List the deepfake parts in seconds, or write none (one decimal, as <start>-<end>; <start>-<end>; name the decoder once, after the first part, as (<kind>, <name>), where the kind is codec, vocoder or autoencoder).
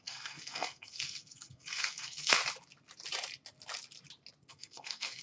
0.0-2.4 (codec, SNAC); 4.5-5.2